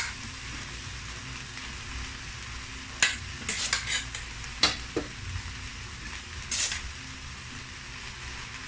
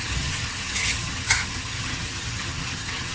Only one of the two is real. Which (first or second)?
first